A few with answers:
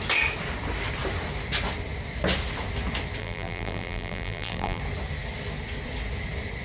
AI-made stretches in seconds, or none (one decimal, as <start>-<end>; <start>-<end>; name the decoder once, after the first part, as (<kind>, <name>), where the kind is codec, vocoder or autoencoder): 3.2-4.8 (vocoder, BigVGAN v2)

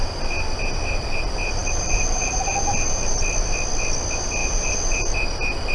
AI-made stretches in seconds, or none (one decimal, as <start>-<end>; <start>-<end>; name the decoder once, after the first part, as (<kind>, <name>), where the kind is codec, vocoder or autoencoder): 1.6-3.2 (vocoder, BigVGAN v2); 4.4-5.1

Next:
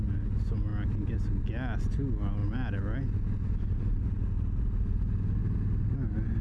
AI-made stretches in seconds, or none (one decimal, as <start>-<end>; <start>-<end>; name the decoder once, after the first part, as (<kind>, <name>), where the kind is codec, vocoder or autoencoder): none

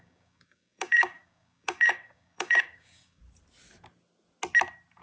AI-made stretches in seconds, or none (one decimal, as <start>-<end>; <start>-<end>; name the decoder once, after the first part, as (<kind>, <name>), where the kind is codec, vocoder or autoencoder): 0.0-3.2 (codec, DAC)

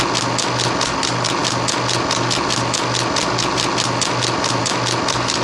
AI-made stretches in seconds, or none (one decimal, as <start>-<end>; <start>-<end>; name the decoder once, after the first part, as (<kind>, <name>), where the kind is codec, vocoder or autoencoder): none

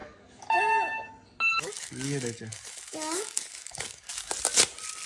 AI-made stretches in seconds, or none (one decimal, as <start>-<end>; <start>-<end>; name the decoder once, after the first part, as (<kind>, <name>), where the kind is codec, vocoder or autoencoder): 0.0-0.6 (codec, DAC); 1.5-4.3

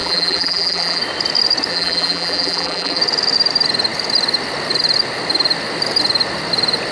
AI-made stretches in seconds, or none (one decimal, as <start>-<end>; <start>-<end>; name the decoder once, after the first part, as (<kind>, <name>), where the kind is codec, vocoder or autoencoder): 0.0-1.0 (vocoder, BigVGAN v2); 1.7-3.0

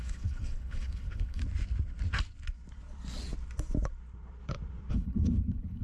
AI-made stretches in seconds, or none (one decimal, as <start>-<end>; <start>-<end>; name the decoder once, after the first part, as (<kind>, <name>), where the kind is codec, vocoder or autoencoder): 0.0-1.4 (codec, HILCodec); 4.9-5.8